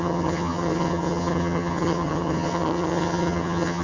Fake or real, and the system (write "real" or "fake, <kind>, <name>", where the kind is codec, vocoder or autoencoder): fake, vocoder, HiFi-GAN